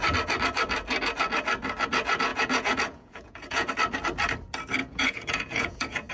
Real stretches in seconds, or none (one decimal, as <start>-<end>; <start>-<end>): 0.0-2.3; 3.7-4.8